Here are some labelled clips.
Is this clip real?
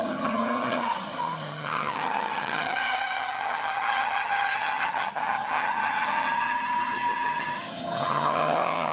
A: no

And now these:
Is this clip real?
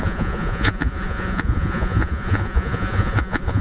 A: no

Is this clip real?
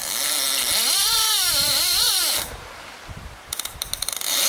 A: no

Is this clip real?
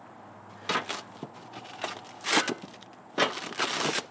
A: yes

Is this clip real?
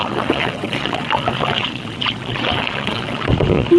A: no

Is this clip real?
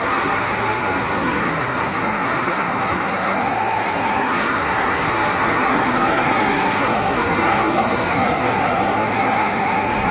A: no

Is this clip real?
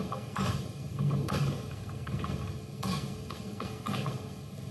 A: no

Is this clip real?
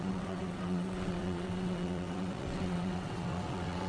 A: no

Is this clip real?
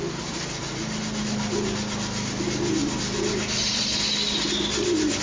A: yes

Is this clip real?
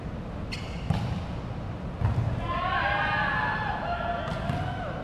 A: yes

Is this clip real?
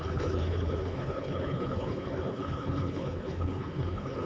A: no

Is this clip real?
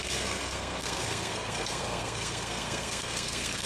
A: no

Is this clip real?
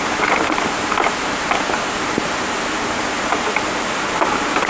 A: no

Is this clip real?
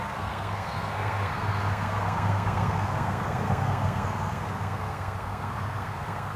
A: no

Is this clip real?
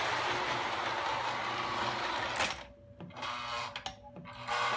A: yes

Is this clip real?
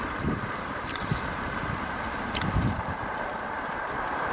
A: no